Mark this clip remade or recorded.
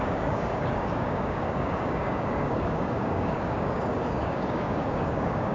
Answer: remade